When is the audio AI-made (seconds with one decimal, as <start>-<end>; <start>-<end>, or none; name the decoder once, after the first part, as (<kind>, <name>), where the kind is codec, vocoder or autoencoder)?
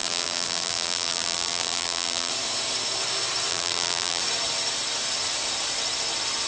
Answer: 0.0-2.3 (vocoder, BigVGAN v2); 3.5-4.2